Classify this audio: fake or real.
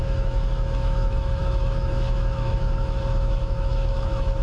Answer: fake